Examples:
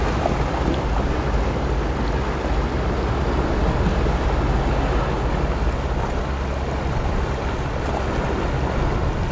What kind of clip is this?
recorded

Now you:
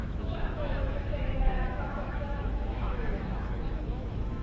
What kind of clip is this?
remade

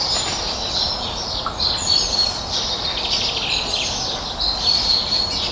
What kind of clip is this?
recorded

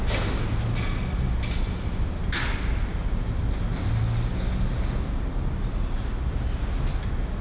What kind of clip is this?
recorded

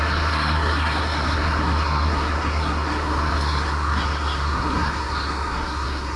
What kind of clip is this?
remade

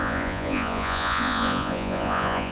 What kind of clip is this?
remade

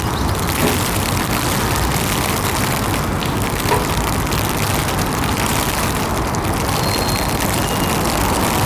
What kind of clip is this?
recorded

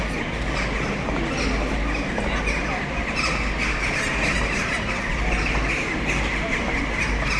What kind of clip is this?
recorded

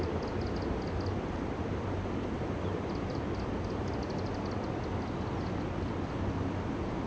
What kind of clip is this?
recorded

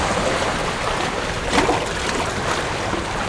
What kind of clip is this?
recorded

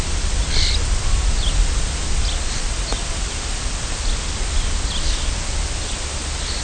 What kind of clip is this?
recorded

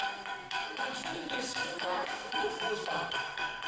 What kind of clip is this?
remade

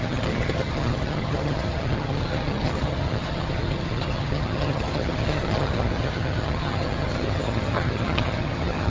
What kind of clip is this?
remade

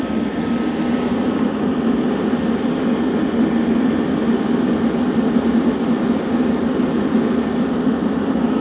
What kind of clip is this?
recorded